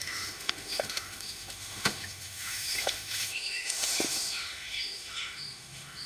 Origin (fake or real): fake